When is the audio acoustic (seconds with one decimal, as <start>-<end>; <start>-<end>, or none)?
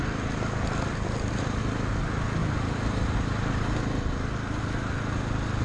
0.0-5.6